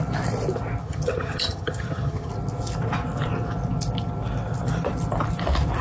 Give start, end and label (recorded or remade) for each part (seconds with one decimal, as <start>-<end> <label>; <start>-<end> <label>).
0.0-0.8 recorded; 0.8-2.3 remade; 2.3-5.8 recorded